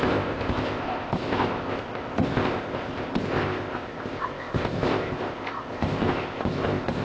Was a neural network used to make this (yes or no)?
yes